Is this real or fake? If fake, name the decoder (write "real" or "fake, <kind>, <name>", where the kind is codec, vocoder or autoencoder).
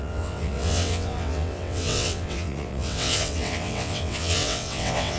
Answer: fake, vocoder, WaveNeXt